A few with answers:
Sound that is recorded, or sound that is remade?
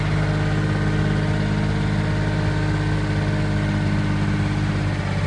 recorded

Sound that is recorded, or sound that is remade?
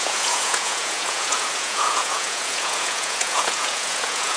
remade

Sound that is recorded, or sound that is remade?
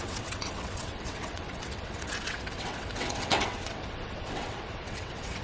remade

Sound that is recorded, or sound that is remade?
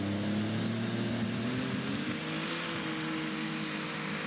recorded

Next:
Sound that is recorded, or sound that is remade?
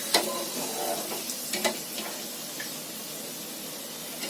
recorded